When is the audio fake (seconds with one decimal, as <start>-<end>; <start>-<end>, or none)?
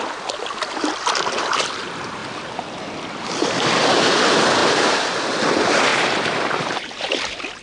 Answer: 4.6-5.2; 5.9-7.0